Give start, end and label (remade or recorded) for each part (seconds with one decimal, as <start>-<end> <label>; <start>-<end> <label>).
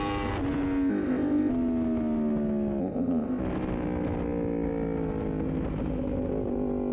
0.0-0.9 recorded; 0.9-1.5 remade; 1.5-2.8 recorded; 2.8-3.4 remade; 3.4-6.9 recorded